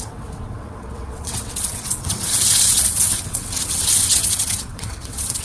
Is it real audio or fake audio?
fake